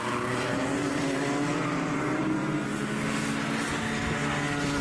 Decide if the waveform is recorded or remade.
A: recorded